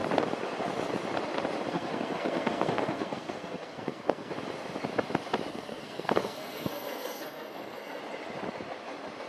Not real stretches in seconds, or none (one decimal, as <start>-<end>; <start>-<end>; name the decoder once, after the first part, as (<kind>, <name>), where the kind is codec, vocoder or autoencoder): 1.7-4.3 (codec, SNAC); 5.5-8.0